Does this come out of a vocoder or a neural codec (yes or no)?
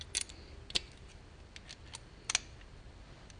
no